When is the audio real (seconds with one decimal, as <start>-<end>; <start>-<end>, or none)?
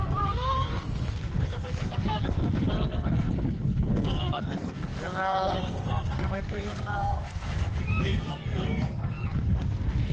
none